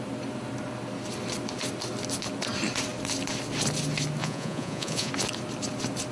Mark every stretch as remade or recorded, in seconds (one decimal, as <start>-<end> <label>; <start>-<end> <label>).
0.0-4.2 recorded; 4.2-5.1 remade; 5.1-6.1 recorded